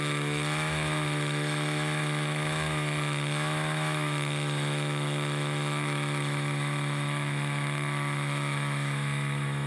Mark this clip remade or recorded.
remade